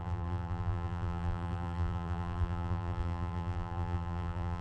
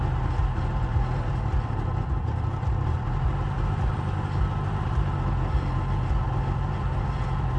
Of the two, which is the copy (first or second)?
first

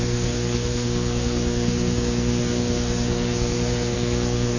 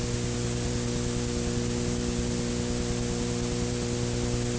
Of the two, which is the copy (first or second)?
first